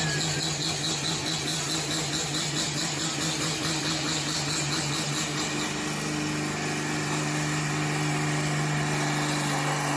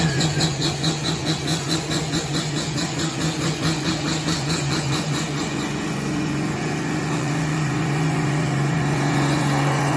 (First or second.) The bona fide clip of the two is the first